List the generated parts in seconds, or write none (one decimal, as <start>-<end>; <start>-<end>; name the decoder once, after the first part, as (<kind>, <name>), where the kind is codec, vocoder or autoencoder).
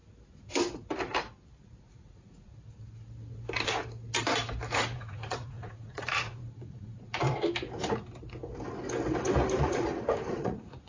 1.8-2.5 (vocoder, Vocos); 4.7-7.2; 9.6-10.9